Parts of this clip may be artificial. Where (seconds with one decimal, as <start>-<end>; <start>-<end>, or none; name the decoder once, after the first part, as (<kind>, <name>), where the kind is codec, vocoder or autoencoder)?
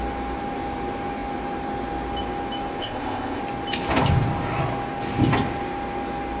2.8-3.4 (codec, ZipCodec)